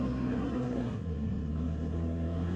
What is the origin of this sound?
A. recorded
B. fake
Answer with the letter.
B